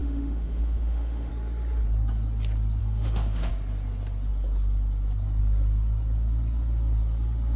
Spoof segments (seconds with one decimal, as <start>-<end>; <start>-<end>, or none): 0.0-1.3; 2.8-3.5